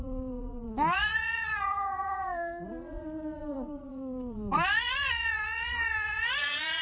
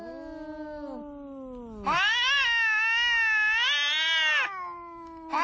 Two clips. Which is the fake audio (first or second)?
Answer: first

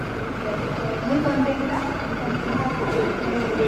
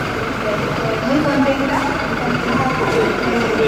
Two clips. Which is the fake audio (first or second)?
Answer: first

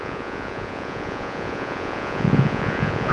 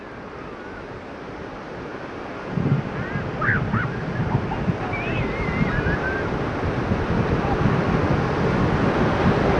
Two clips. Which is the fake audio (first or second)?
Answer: first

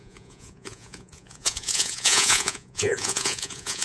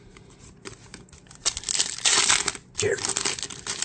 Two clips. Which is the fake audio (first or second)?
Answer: first